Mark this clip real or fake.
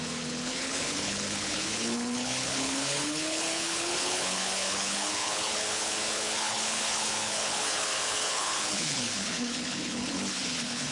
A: fake